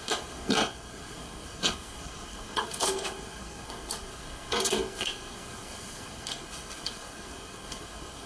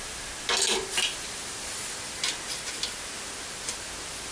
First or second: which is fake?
first